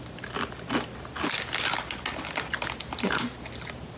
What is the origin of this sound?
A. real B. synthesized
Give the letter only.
A